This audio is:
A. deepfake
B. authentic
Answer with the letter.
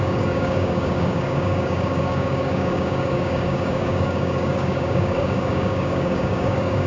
A